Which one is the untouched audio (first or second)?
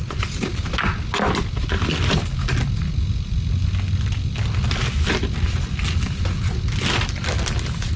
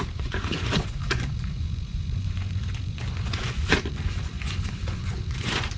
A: first